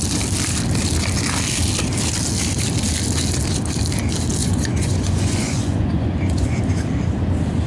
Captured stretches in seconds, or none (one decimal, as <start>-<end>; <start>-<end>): 0.0-4.4; 6.6-7.7